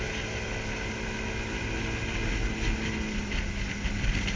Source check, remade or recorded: recorded